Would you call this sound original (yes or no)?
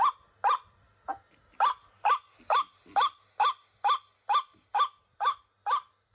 yes